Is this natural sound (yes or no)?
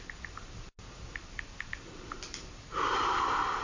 yes